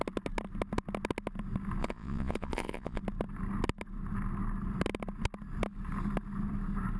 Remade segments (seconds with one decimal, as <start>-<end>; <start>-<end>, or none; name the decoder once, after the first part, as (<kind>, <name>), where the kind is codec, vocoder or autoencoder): 1.8-3.0 (vocoder, Vocos)